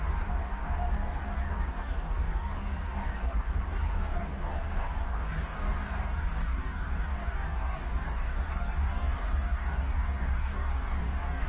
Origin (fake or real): fake